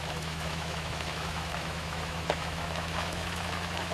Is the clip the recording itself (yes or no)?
no